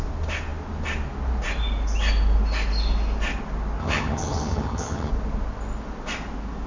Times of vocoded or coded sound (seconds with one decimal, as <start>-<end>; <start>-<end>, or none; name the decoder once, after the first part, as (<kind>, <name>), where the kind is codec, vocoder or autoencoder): 3.8-5.1 (vocoder, HiFi-GAN)